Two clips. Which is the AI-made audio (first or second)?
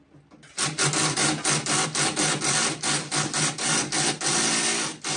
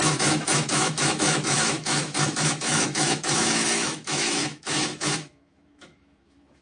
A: second